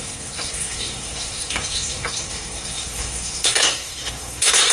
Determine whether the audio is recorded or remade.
remade